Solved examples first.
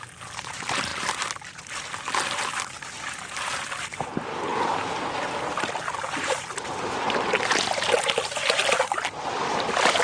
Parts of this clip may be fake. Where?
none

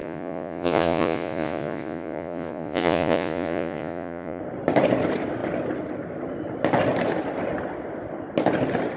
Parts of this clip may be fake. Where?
0.0-4.4

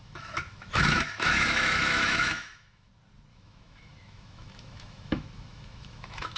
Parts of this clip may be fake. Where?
0.0-2.9; 3.3-6.4

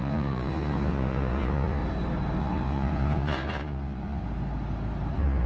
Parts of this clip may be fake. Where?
0.0-1.8; 2.4-4.2; 5.1-5.5

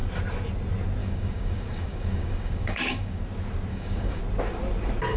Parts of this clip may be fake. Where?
1.0-3.2; 3.7-4.2

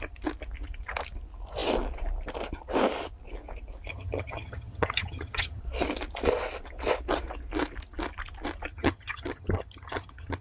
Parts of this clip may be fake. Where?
3.9-5.6; 8.7-10.4

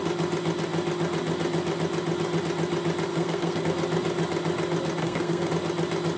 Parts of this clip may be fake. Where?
3.1-3.6; 5.0-5.5

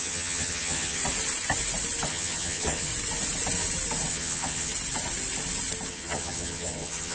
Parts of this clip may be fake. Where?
0.0-1.0; 2.1-2.9; 4.1-4.7; 5.9-7.1